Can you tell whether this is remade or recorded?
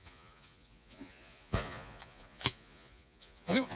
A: remade